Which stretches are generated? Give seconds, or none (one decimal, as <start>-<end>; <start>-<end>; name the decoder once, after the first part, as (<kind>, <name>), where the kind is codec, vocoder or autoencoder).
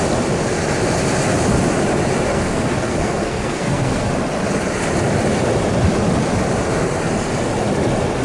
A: 2.3-4.1 (codec, SNAC)